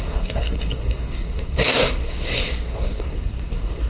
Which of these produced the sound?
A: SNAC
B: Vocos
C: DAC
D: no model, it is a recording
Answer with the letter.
A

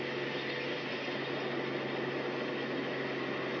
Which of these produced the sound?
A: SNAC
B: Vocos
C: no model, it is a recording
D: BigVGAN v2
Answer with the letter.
C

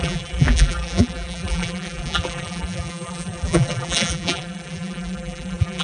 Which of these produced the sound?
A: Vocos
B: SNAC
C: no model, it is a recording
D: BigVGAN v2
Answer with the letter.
D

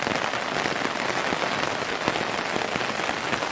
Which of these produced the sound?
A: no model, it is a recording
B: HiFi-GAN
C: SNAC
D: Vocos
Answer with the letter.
A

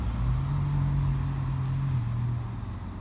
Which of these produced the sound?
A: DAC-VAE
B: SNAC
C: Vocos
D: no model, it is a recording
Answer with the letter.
D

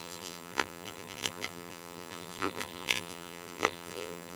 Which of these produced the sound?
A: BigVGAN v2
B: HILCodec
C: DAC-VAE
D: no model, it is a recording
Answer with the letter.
A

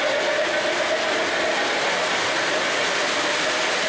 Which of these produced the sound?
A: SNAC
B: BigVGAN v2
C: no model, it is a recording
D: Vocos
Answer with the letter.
C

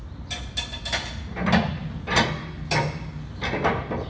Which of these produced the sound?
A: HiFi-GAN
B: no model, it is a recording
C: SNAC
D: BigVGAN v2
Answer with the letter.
B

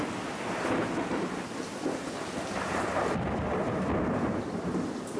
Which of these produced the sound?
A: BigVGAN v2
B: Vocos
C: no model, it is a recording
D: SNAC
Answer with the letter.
A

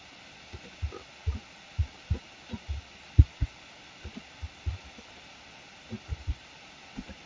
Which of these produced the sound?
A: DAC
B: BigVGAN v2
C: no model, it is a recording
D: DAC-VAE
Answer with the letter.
C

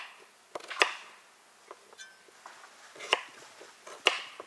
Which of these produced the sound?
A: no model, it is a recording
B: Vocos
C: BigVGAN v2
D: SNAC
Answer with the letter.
A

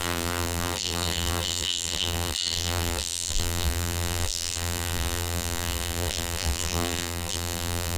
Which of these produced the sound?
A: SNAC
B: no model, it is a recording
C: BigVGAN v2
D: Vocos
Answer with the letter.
C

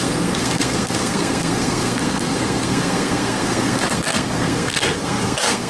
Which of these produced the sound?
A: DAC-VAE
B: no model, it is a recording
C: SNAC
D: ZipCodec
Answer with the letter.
C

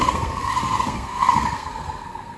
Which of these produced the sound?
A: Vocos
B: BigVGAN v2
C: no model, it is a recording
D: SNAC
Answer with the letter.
D